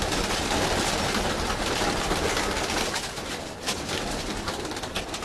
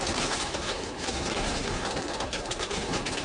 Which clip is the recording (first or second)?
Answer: first